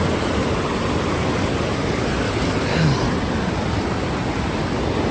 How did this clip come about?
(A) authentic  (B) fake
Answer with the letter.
A